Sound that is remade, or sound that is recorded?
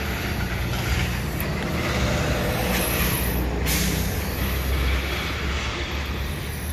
recorded